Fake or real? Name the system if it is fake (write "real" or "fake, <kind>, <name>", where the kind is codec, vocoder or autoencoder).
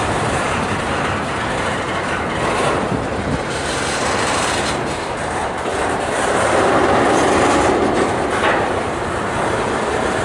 fake, vocoder, BigVGAN v2